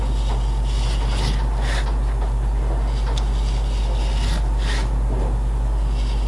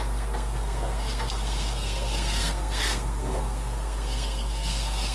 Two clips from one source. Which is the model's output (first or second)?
second